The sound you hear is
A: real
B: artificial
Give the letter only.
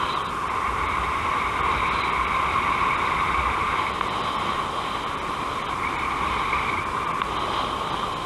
A